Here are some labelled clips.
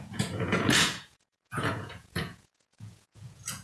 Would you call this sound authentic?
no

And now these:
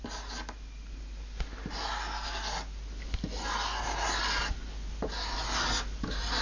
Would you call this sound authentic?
yes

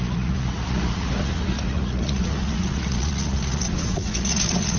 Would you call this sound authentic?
no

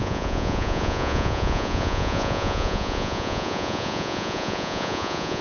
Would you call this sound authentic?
no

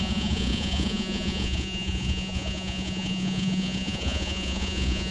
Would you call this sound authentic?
no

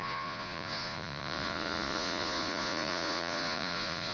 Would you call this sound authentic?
no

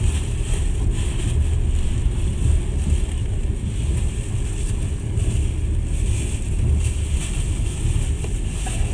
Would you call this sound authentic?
yes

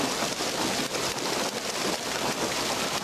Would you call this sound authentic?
yes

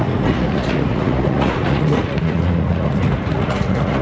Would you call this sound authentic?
no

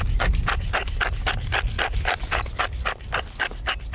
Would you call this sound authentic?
yes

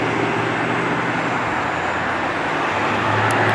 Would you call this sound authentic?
yes